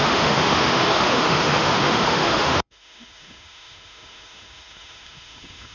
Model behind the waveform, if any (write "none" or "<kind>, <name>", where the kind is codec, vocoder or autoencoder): autoencoder, DAC-VAE